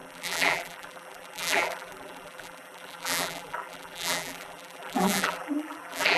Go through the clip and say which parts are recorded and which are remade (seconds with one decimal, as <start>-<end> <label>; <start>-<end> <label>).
0.0-6.2 remade